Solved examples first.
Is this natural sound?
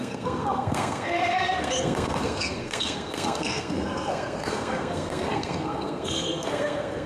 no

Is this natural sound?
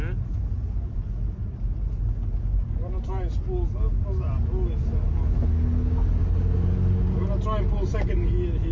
yes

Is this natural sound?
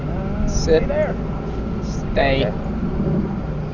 yes